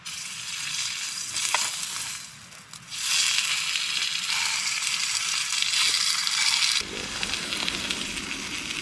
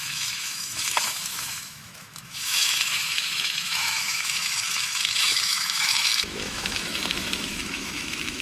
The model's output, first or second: second